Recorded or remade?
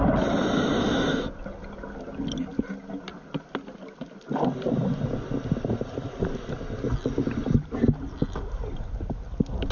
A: recorded